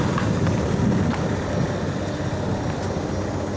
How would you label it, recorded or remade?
recorded